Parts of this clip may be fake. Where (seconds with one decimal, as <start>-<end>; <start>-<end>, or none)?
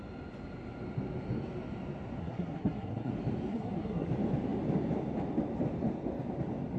2.2-3.1; 3.5-4.1